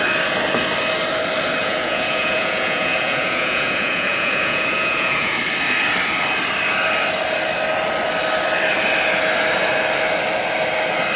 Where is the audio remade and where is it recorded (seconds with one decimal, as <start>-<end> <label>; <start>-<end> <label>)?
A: 0.0-1.6 recorded; 1.6-5.4 remade; 5.4-11.2 recorded